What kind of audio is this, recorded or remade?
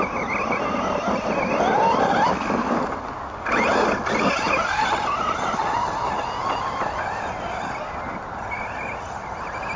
recorded